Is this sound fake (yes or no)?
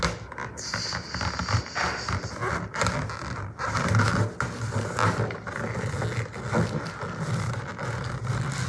no